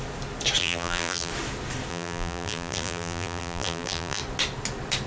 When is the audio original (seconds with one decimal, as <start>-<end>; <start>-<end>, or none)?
0.0-0.6; 1.3-1.9; 4.2-5.1